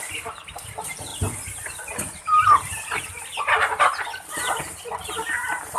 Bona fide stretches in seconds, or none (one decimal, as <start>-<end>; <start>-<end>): 0.0-5.8